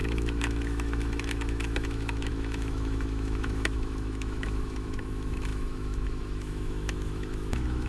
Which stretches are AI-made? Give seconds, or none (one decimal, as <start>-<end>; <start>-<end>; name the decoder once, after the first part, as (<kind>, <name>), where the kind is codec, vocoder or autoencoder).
0.0-7.9 (autoencoder, DAC-VAE)